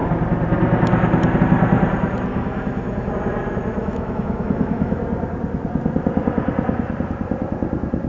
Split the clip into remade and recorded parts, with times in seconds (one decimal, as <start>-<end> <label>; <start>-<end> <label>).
0.0-2.3 recorded; 2.3-3.1 remade; 3.1-3.8 recorded; 3.8-5.0 remade; 5.0-8.1 recorded